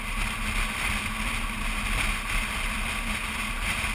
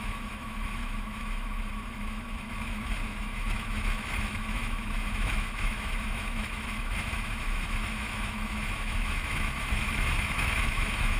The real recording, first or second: first